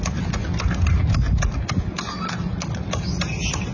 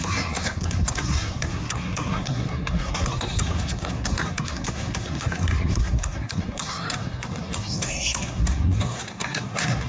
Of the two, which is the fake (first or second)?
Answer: second